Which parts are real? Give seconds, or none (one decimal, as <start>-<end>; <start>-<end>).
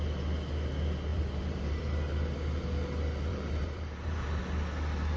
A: 0.0-1.1; 1.8-3.3; 4.4-5.2